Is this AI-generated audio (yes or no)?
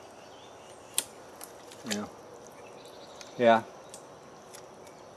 no